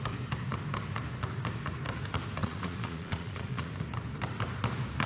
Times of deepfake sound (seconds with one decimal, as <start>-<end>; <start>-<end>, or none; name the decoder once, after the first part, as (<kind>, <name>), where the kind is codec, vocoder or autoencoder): 2.4-3.7 (vocoder, Vocos)